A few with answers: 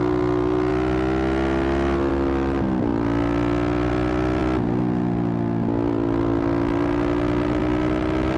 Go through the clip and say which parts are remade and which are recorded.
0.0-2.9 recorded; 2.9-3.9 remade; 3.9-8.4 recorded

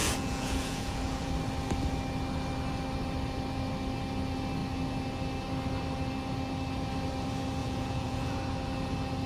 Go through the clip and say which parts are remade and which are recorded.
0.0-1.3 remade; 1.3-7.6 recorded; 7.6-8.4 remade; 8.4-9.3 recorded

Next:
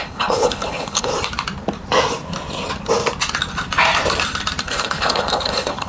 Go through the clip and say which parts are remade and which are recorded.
0.0-1.1 remade; 1.1-4.6 recorded; 4.6-5.9 remade

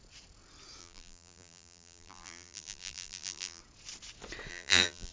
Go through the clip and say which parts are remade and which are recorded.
0.0-0.8 recorded; 0.8-3.6 remade; 3.6-4.5 recorded; 4.5-5.1 remade

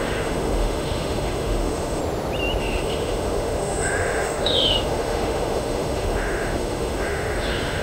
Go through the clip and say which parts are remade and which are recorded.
0.0-2.0 remade; 2.0-2.6 recorded; 2.6-7.8 remade